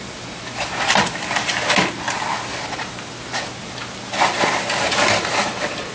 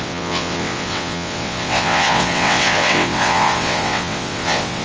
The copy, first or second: second